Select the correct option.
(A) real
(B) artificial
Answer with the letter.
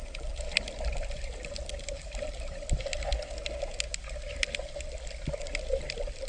A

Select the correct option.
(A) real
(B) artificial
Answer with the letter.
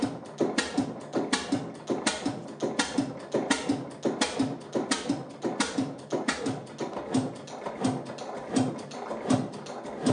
A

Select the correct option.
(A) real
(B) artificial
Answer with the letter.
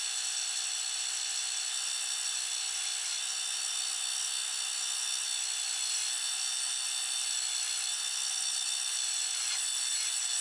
A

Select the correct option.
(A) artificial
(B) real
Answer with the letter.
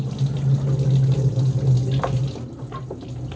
B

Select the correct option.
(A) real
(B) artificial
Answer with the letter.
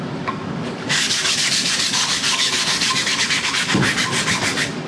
B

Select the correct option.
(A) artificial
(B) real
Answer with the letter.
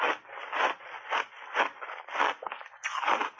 B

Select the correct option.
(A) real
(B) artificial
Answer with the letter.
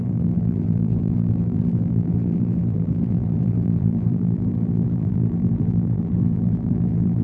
B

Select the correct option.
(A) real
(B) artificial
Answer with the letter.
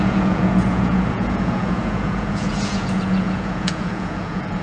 B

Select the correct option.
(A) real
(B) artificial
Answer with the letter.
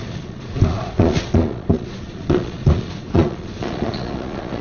B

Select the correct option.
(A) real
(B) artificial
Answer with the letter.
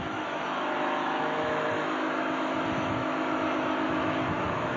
B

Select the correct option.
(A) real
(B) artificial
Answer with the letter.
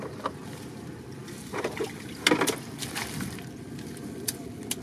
A